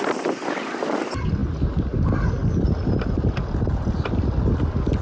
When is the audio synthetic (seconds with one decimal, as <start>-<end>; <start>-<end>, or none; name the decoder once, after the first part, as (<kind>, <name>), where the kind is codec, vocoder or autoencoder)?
none